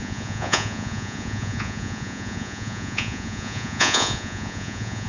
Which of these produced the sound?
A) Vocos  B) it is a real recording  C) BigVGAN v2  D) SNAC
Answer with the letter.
A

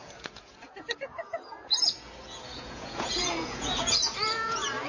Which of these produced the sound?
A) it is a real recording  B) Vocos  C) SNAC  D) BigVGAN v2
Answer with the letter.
B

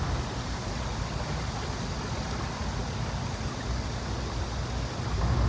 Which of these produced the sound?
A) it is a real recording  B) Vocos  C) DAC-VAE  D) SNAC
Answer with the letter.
A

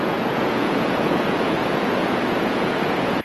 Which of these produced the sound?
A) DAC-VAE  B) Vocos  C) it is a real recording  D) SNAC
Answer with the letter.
B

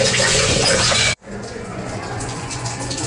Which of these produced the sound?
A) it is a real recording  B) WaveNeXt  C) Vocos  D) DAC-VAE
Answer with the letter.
C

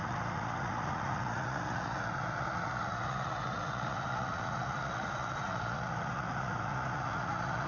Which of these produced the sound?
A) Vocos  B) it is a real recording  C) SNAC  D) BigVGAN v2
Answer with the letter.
A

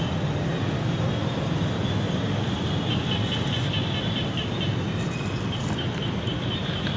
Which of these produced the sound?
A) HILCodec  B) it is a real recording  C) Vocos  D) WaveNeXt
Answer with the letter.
B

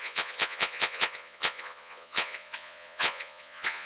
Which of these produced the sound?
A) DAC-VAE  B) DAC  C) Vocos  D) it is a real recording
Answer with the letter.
C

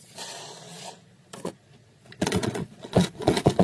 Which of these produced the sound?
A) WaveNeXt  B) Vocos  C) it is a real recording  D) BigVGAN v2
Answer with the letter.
B